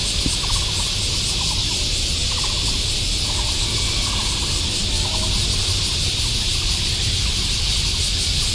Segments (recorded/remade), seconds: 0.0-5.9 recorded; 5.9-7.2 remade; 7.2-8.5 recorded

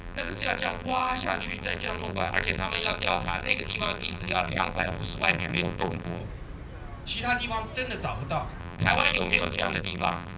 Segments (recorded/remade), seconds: 0.0-6.2 remade; 6.2-8.6 recorded; 8.6-10.4 remade

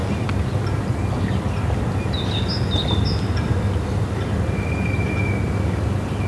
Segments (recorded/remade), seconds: 0.0-6.3 recorded

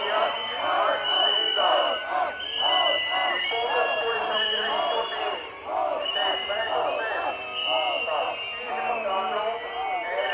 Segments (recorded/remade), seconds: 0.0-3.2 recorded; 3.2-6.7 remade; 6.7-10.3 recorded

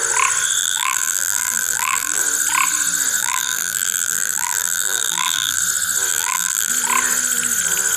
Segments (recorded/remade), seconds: 0.0-0.6 recorded; 0.6-2.2 remade; 2.2-3.2 recorded; 3.2-5.6 remade; 5.6-6.1 recorded; 6.1-6.7 remade; 6.7-8.0 recorded